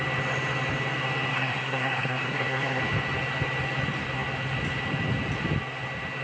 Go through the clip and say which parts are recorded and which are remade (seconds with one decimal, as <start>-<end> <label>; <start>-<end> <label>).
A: 0.0-1.3 recorded; 1.3-2.8 remade; 2.8-6.2 recorded